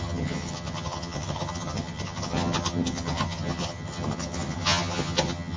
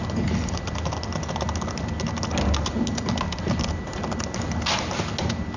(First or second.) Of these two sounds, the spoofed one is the first